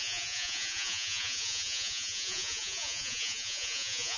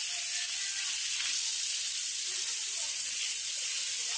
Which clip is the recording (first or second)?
second